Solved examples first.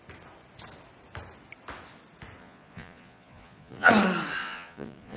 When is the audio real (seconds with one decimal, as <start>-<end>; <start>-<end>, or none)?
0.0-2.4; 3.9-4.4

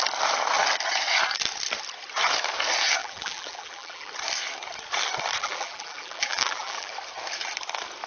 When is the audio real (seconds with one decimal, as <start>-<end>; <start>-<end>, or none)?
0.0-3.0; 4.1-5.4; 6.9-8.1

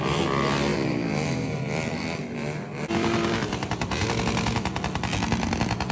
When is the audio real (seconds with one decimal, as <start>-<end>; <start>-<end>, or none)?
0.0-0.7; 4.2-5.9

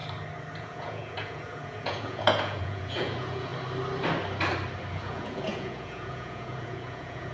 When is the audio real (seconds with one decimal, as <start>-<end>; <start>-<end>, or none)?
0.0-0.6; 3.5-4.9

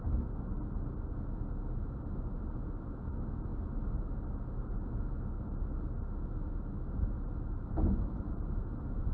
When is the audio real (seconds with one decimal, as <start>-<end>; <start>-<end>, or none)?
0.0-9.1

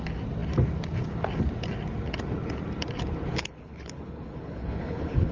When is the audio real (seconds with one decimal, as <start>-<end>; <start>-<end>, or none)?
0.0-3.3

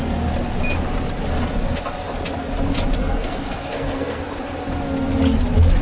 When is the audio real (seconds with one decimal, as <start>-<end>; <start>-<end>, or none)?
0.0-3.0; 4.2-5.8